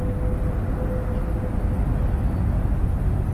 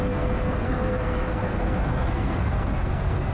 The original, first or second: first